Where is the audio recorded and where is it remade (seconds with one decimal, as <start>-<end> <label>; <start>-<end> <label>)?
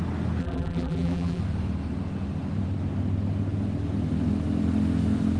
0.0-0.4 recorded; 0.4-1.4 remade; 1.4-5.4 recorded